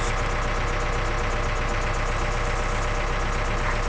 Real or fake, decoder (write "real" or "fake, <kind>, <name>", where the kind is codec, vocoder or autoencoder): real